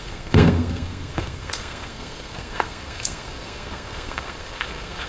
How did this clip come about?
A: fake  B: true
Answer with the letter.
A